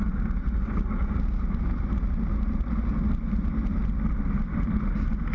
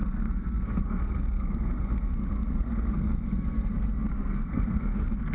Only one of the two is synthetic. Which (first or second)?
second